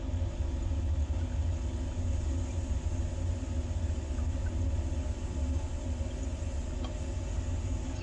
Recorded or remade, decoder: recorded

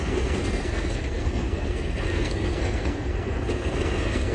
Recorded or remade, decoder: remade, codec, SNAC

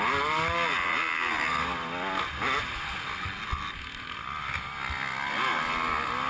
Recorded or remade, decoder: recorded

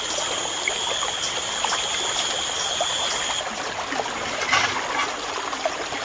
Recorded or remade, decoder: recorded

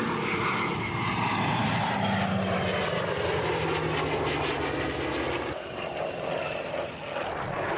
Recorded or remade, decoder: recorded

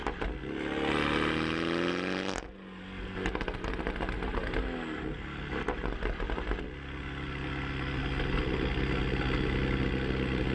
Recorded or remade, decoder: recorded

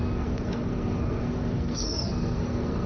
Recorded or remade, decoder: remade, codec, SNAC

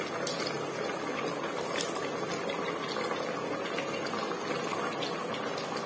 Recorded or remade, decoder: recorded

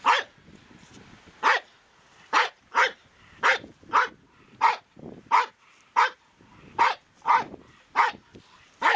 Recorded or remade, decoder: recorded